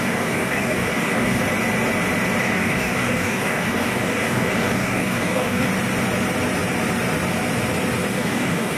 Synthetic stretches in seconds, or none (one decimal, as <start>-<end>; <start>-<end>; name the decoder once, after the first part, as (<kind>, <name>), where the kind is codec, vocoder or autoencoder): 0.0-1.4 (codec, DAC); 2.4-5.7; 8.1-8.8